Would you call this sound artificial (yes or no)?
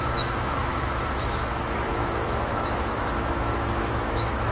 yes